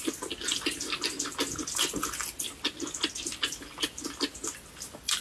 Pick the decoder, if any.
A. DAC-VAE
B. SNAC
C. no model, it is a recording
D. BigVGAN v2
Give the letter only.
C